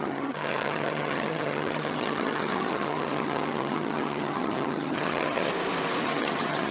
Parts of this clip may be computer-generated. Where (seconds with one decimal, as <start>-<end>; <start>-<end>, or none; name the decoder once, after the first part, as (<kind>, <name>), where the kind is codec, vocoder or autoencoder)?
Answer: 0.0-5.5 (vocoder, HiFi-GAN); 6.0-6.7